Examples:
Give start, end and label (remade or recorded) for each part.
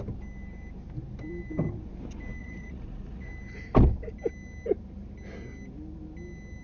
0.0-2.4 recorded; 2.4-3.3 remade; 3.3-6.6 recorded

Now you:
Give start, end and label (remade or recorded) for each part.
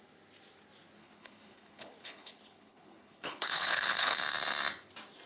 0.0-1.0 recorded; 1.0-4.2 remade; 4.2-5.3 recorded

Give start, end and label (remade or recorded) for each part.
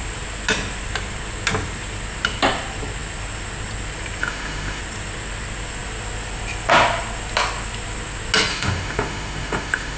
0.0-4.2 recorded; 4.2-4.8 remade; 4.8-8.5 recorded; 8.5-10.0 remade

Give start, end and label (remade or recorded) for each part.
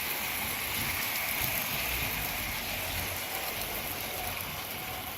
0.0-5.2 recorded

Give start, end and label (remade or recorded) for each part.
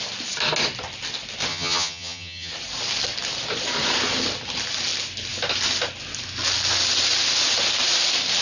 0.0-1.5 recorded; 1.5-2.5 remade; 2.5-8.4 recorded